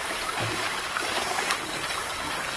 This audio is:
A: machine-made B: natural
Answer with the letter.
A